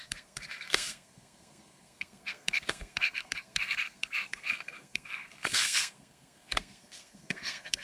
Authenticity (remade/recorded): remade